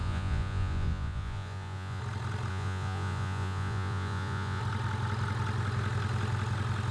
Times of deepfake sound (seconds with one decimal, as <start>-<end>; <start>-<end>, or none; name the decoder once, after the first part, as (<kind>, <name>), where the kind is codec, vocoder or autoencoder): 0.0-2.0 (vocoder, Vocos); 2.5-4.6